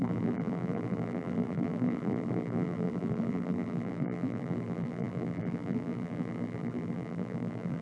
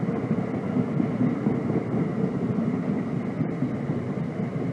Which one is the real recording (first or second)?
second